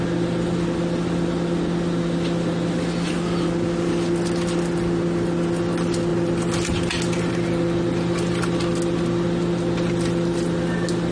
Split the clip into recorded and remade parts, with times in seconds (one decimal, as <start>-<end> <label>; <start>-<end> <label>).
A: 0.0-11.1 recorded